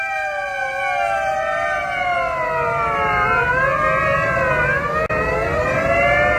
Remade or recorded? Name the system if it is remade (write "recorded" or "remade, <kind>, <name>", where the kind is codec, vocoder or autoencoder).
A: recorded